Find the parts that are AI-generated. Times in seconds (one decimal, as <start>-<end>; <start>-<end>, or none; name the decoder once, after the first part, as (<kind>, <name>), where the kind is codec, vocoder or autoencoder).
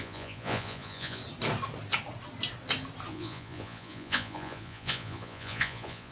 0.0-1.2 (vocoder, Vocos); 3.1-6.1